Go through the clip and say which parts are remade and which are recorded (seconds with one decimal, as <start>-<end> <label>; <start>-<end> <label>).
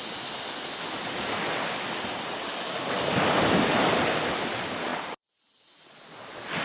0.0-6.6 recorded